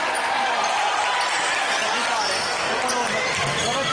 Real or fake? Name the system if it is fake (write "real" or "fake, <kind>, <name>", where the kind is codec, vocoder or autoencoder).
real